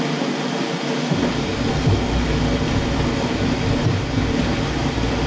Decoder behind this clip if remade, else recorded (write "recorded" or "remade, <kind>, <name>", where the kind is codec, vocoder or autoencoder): recorded